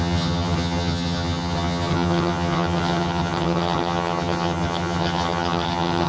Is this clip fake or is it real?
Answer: fake